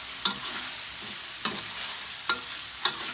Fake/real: real